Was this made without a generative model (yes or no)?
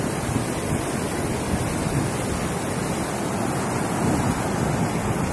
yes